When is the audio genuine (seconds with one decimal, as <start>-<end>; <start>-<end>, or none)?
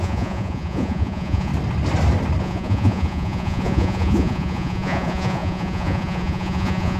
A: 1.5-2.4